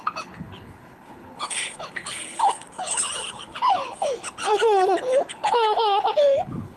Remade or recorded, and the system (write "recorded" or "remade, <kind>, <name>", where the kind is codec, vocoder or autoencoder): remade, codec, HILCodec